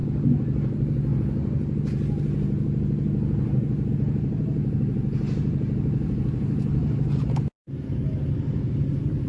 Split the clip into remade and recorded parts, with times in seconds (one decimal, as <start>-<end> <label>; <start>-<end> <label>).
0.0-3.9 recorded; 3.9-9.3 remade